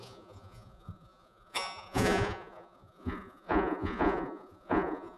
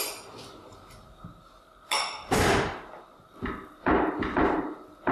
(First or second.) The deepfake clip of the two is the first